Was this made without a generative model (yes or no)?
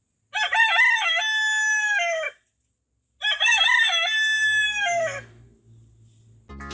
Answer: yes